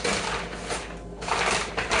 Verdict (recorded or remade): recorded